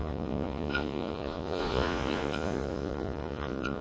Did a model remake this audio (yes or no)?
yes